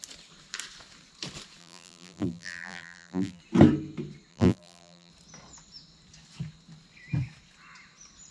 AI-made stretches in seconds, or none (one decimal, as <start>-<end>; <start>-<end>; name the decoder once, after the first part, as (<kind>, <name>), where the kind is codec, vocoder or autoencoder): 1.6-3.4 (vocoder, BigVGAN v2); 4.3-5.1